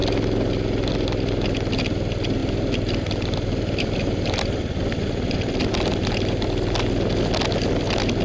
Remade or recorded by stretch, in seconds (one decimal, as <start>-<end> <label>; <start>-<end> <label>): 0.0-2.4 recorded; 2.4-5.7 remade; 5.7-8.2 recorded